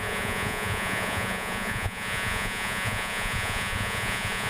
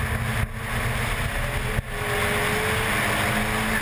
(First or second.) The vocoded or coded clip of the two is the first